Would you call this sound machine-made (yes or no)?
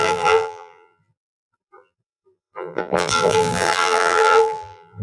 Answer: yes